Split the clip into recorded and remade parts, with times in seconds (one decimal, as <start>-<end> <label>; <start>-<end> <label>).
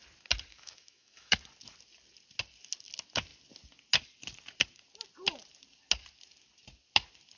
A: 0.0-0.5 recorded; 0.5-1.4 remade; 1.4-7.4 recorded